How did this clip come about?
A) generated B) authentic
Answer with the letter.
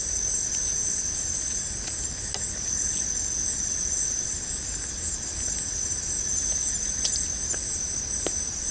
B